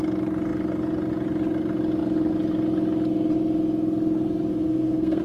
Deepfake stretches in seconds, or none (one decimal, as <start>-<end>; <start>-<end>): 4.5-5.2